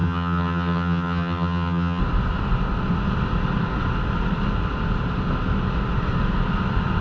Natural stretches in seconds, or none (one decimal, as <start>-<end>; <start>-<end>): 2.0-7.0